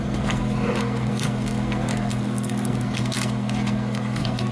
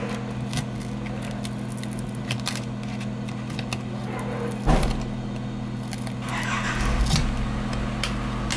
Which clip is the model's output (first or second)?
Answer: first